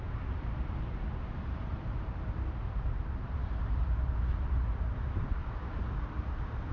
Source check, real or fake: fake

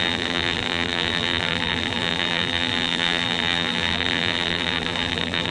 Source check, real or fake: fake